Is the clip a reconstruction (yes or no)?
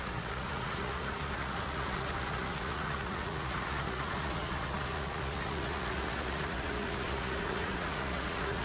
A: yes